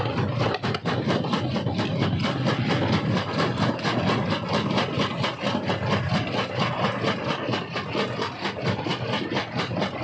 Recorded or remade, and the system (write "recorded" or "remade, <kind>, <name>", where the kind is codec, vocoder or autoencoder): recorded